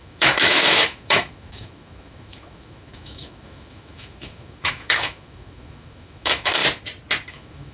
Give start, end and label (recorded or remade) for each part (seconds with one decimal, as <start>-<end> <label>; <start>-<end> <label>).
0.0-6.6 remade; 6.6-7.3 recorded; 7.3-7.7 remade